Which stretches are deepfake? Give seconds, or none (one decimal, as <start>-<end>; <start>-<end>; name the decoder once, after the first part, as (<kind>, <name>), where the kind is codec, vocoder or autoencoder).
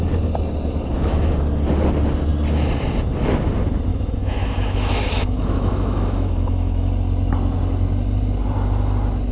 3.9-6.9 (autoencoder, DAC-VAE)